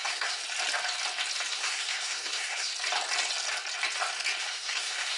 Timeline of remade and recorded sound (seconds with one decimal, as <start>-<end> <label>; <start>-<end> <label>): 0.0-0.4 remade; 0.4-1.5 recorded; 1.5-2.7 remade; 2.7-4.4 recorded; 4.4-5.2 remade